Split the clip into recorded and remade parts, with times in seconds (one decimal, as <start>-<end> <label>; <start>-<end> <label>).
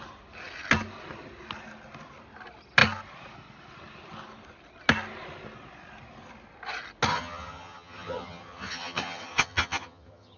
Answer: 0.0-7.1 recorded; 7.1-10.4 remade